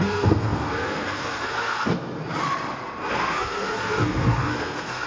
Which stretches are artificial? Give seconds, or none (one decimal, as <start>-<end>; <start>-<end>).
0.0-2.2; 3.1-5.1